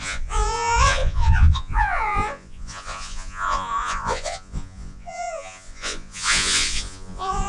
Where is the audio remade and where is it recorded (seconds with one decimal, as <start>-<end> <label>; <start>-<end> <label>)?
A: 0.0-7.5 remade